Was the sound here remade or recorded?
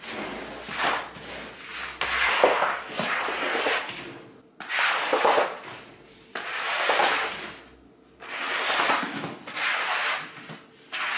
recorded